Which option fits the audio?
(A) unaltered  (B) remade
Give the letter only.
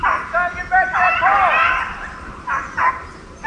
A